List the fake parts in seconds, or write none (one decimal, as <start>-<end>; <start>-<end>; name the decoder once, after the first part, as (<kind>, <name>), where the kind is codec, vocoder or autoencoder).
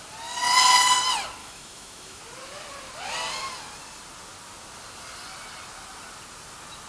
1.4-2.2 (autoencoder, DAC-VAE)